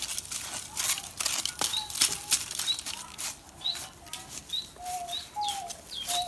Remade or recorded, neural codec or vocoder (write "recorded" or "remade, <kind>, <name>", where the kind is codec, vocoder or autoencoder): recorded